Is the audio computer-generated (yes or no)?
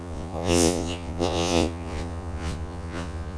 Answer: yes